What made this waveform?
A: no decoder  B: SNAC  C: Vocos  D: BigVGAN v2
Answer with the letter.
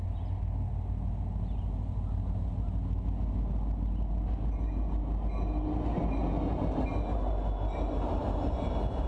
A